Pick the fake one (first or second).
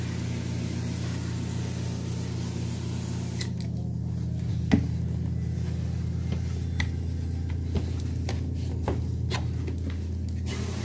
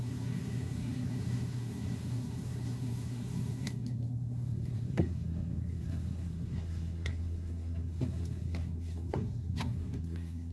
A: second